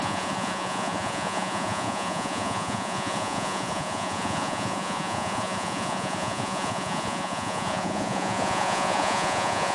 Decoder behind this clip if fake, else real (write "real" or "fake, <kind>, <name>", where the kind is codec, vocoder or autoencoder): fake, vocoder, Vocos